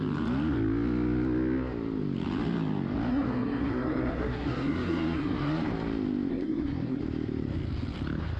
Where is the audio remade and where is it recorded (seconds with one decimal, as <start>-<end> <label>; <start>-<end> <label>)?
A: 0.0-3.1 recorded; 3.1-5.5 remade; 5.5-6.3 recorded; 6.3-7.0 remade; 7.0-8.4 recorded